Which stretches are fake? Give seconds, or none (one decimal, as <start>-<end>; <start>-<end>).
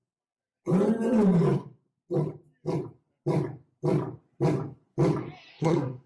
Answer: 5.5-6.1